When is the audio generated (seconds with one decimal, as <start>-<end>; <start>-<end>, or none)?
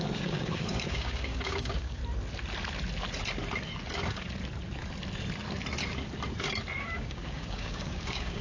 0.0-2.0; 6.8-8.4